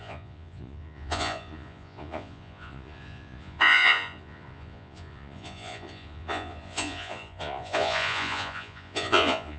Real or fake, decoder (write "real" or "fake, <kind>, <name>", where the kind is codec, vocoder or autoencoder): fake, vocoder, Vocos